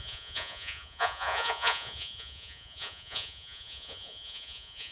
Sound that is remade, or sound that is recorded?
remade